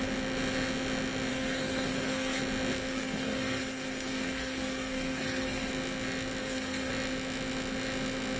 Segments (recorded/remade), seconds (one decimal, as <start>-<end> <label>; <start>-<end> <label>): 0.0-1.3 recorded; 1.3-2.4 remade; 2.4-2.9 recorded; 2.9-5.7 remade; 5.7-6.4 recorded; 6.4-6.9 remade; 6.9-8.4 recorded